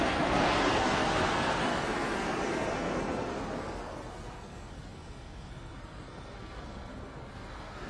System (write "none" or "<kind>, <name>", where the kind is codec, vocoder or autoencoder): codec, SNAC